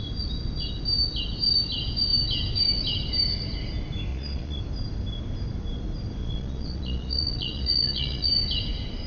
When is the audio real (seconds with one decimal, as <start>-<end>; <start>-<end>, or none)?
0.0-4.1; 4.6-6.2; 8.3-9.1